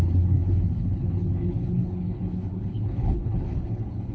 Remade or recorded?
remade